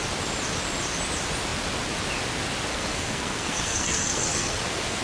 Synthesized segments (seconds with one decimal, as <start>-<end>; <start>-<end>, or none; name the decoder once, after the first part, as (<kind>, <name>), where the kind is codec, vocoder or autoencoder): 2.7-5.0 (codec, SNAC)